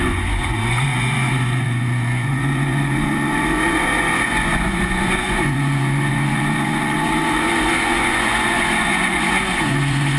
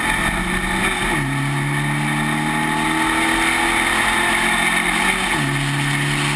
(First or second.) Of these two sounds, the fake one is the first